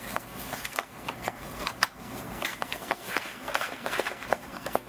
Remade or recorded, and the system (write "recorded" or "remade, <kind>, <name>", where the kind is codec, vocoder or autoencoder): remade, codec, SNAC